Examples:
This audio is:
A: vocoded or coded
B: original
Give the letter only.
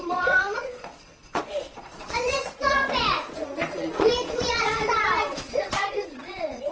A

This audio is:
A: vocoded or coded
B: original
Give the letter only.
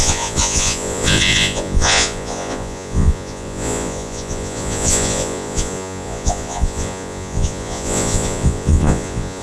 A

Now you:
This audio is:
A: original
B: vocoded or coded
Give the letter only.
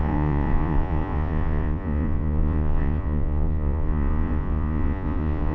B